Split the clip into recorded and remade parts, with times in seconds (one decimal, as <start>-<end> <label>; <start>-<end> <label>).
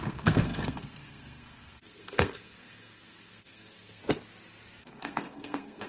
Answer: 0.0-4.0 remade; 4.0-4.8 recorded; 4.8-5.9 remade